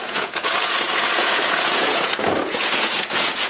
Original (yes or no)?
no